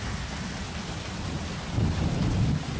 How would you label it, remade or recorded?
recorded